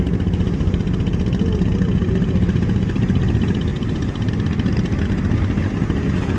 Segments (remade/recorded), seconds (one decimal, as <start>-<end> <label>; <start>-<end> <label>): 0.0-3.7 recorded; 3.7-4.3 remade; 4.3-6.4 recorded